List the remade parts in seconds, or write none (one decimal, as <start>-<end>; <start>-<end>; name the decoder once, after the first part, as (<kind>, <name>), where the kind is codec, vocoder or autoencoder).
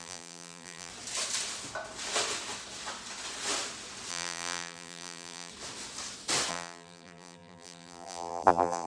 0.0-0.9 (vocoder, BigVGAN v2); 4.1-5.5; 6.5-8.9